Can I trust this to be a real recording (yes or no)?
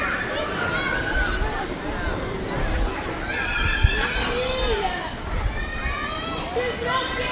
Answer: yes